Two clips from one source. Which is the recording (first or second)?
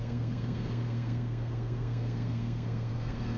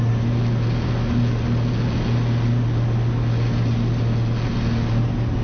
second